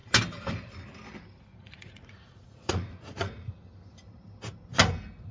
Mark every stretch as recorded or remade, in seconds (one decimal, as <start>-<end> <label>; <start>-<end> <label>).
0.0-1.5 recorded; 1.5-3.5 remade; 3.5-5.3 recorded